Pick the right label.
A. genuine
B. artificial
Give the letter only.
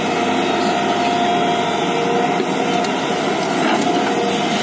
A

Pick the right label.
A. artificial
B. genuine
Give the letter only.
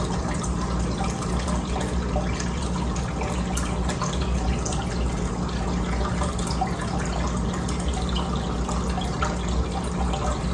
B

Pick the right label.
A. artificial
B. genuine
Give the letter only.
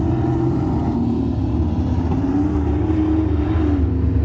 B